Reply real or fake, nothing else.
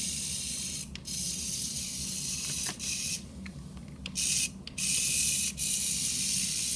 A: real